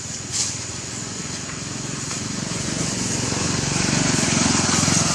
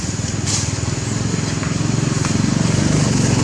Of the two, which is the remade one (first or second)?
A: first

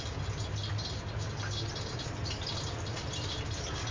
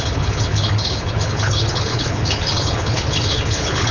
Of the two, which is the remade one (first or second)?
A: second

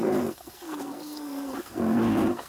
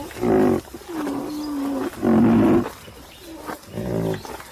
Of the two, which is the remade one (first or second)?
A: first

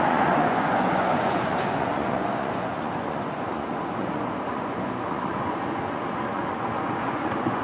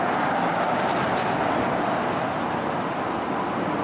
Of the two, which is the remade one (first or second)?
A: first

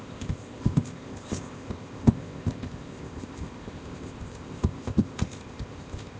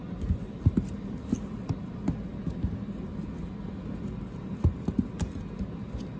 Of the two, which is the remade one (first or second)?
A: first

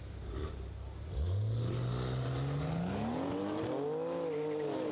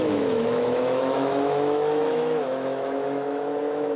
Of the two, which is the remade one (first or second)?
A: second